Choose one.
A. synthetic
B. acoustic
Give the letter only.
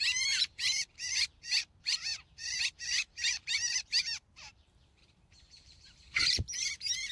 A